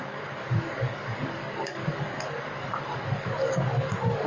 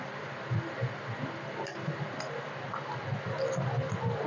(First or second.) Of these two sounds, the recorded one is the second